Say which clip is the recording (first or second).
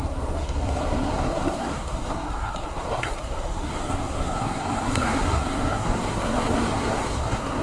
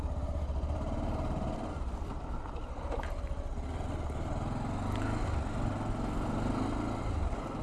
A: second